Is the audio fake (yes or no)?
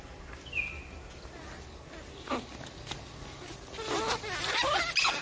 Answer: no